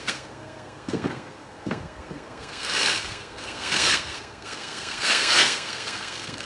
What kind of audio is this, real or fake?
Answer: fake